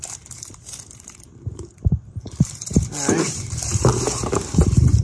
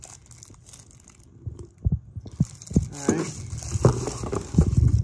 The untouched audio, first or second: second